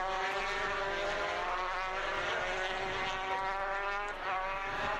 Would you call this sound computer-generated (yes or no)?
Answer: no